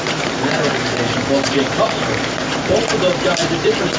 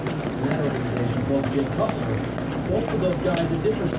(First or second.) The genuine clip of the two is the second